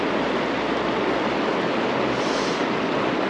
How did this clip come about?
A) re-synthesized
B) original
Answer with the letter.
B